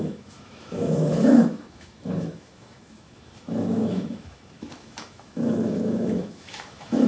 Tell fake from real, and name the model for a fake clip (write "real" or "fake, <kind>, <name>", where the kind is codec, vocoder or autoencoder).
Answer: fake, autoencoder, DAC-VAE